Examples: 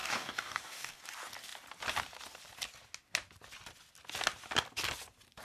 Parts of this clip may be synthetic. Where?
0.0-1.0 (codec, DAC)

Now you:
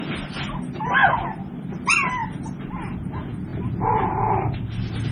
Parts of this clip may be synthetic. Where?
none

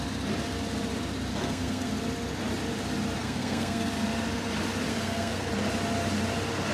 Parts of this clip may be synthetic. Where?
1.3-1.9 (codec, SNAC); 3.2-3.9; 4.9-5.5

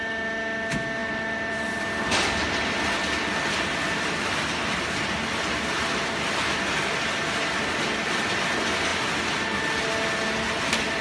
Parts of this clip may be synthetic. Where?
1.0-1.8 (vocoder, BigVGAN v2)

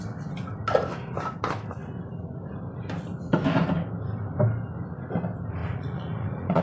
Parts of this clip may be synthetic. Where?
5.6-6.6 (vocoder, Vocos)

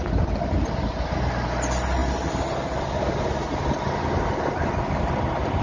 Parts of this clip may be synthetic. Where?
none

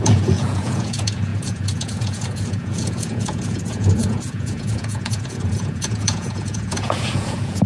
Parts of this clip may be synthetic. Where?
0.0-7.7 (vocoder, Vocos)